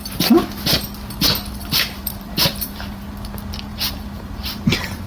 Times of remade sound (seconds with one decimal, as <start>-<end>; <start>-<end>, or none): 0.0-0.6; 1.6-3.0; 3.7-5.1

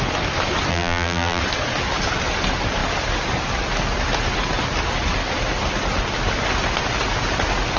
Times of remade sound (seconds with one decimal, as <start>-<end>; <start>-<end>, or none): 0.7-1.4

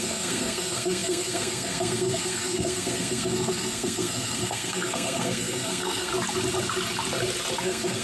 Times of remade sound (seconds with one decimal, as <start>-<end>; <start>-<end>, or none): 0.0-6.1; 7.6-8.0

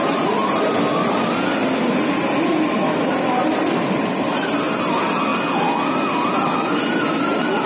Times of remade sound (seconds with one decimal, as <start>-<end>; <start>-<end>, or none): none

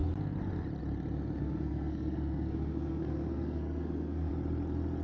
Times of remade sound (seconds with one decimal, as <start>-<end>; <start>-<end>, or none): 1.4-4.3

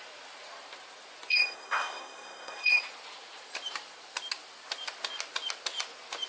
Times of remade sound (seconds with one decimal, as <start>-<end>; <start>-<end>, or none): 1.3-2.8

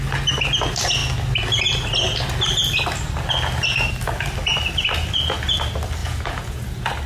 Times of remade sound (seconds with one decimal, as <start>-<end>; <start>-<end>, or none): 6.0-6.6